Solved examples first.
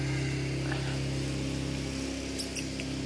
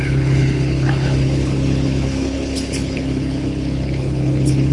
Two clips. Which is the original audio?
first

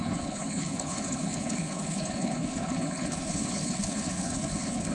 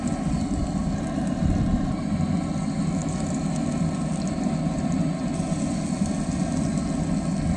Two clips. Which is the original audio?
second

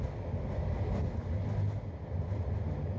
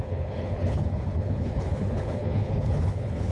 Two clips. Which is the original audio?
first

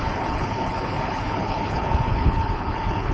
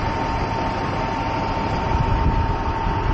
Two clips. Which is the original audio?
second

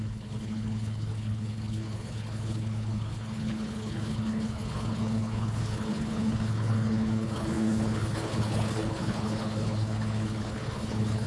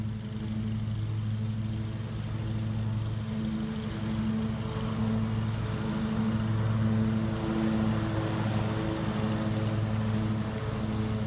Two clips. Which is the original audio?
second